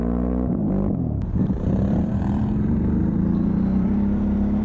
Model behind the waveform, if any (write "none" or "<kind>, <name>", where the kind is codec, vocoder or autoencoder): vocoder, BigVGAN v2